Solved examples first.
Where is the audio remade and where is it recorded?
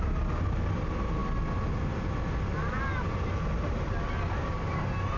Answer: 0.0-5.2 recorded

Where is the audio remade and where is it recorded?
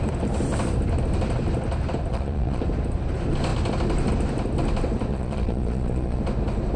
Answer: 0.0-2.1 recorded; 2.1-2.6 remade; 2.6-5.1 recorded; 5.1-6.2 remade; 6.2-6.8 recorded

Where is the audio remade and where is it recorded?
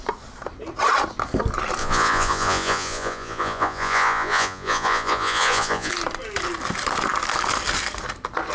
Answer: 0.0-1.8 recorded; 1.8-5.9 remade; 5.9-8.5 recorded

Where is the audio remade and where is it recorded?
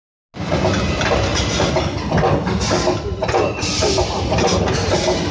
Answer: 0.0-5.3 recorded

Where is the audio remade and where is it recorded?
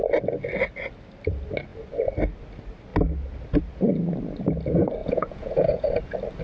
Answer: 0.0-5.0 recorded; 5.0-5.9 remade; 5.9-6.4 recorded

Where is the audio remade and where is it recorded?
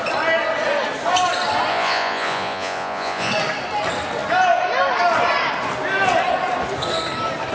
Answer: 0.0-1.7 recorded; 1.7-3.3 remade; 3.3-7.5 recorded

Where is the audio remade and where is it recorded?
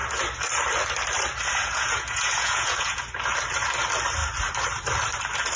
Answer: 0.0-1.6 recorded; 1.6-3.0 remade; 3.0-5.6 recorded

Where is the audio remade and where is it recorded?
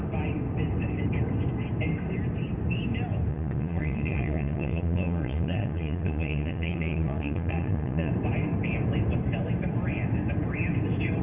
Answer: 0.0-3.3 recorded; 3.3-8.1 remade; 8.1-11.2 recorded